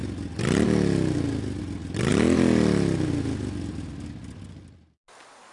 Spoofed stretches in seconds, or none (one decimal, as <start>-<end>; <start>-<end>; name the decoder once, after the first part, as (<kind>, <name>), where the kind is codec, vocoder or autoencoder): none